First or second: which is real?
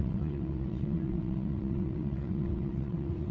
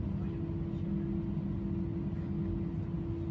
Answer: second